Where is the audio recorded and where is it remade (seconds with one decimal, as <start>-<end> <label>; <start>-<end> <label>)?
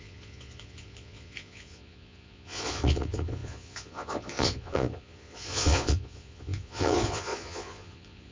0.0-8.3 remade